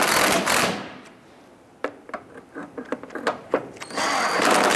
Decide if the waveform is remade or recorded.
recorded